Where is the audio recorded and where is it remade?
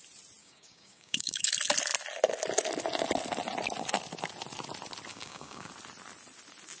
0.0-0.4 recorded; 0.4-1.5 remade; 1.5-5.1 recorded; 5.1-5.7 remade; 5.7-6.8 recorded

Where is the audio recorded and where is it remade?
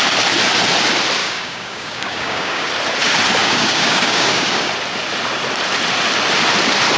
0.0-1.2 recorded; 1.2-2.7 remade; 2.7-3.4 recorded; 3.4-4.7 remade; 4.7-7.0 recorded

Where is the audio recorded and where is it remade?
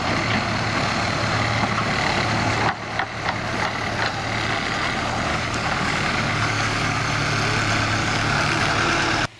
0.0-5.3 recorded; 5.3-7.0 remade; 7.0-8.0 recorded; 8.0-8.7 remade; 8.7-9.4 recorded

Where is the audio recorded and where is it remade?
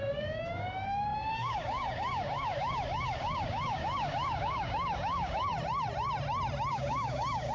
0.0-5.5 remade; 5.5-6.7 recorded; 6.7-7.5 remade